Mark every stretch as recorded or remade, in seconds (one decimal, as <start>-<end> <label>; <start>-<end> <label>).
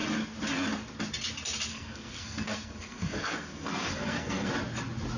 0.0-1.7 recorded; 1.7-4.5 remade; 4.5-5.2 recorded